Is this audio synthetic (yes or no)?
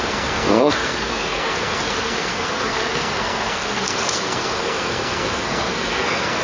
yes